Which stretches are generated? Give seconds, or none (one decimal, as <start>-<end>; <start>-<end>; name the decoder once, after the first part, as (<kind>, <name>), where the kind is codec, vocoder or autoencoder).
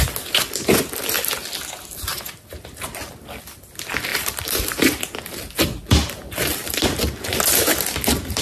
4.1-5.0 (vocoder, BigVGAN v2); 6.6-7.1